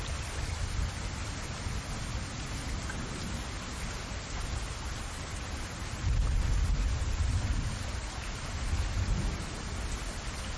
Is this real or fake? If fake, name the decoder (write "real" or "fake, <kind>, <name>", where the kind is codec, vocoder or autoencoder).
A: real